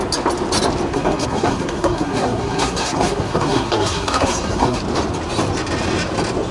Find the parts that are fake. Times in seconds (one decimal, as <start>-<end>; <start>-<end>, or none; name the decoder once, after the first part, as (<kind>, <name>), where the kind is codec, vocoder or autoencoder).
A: 0.9-4.8 (codec, SNAC)

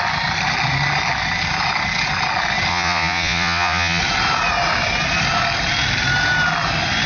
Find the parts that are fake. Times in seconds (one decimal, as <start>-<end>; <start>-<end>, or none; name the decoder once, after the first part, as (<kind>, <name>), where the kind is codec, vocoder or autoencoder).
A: 2.7-4.0 (vocoder, Vocos)

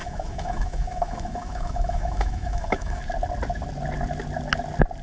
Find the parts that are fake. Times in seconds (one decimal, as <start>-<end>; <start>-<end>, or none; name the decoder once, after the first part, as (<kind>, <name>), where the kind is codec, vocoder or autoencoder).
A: 0.0-3.0 (autoencoder, DAC-VAE)

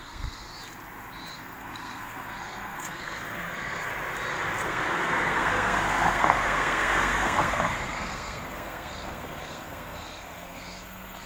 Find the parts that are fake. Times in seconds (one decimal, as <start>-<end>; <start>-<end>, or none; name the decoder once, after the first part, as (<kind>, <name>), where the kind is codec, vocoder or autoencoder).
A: 0.0-0.5 (codec, SNAC); 1.3-3.9; 4.6-11.3

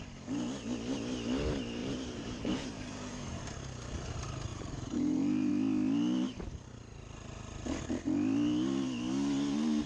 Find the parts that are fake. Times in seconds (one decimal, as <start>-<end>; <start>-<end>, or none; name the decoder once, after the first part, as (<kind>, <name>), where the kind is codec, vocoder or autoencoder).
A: 1.8-3.4 (vocoder, BigVGAN v2); 4.5-5.5

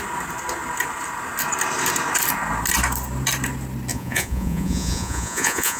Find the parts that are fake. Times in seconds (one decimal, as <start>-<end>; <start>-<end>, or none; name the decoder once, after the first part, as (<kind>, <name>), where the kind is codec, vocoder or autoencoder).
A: 3.9-5.8 (vocoder, Vocos)